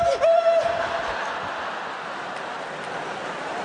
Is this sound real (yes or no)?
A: yes